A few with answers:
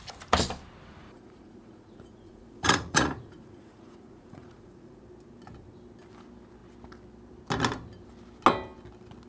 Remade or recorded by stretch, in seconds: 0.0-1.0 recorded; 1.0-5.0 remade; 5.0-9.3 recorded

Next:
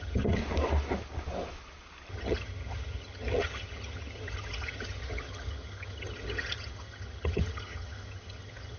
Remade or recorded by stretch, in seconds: 0.0-0.4 remade; 0.4-2.1 recorded; 2.1-8.8 remade

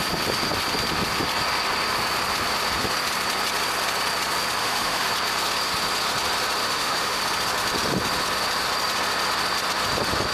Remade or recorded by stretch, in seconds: 0.0-4.6 recorded; 4.6-5.1 remade; 5.1-6.6 recorded; 6.6-7.2 remade; 7.2-10.3 recorded

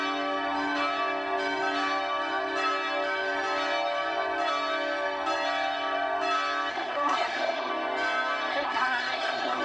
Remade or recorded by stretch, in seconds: 0.0-6.7 recorded; 6.7-7.7 remade; 7.7-8.5 recorded; 8.5-9.6 remade

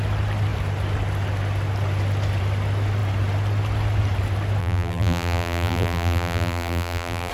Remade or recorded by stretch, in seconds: 0.0-4.6 recorded; 4.6-7.3 remade

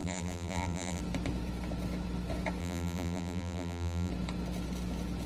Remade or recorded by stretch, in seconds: 0.0-1.0 remade; 1.0-2.6 recorded; 2.6-4.1 remade; 4.1-5.3 recorded

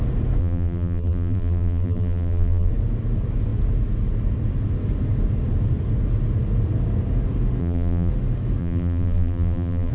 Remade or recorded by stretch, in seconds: 0.0-0.4 recorded; 0.4-2.7 remade; 2.7-7.6 recorded; 7.6-8.1 remade; 8.1-8.6 recorded; 8.6-9.9 remade